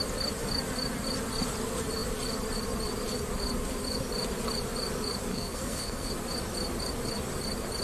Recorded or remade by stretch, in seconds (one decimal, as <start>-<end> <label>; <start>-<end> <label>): 0.0-5.3 recorded; 5.3-6.1 remade; 6.1-7.8 recorded